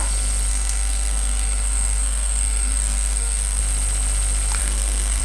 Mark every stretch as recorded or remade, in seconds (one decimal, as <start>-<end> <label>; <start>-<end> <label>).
0.0-0.5 recorded; 0.5-3.6 remade; 3.6-4.6 recorded; 4.6-5.2 remade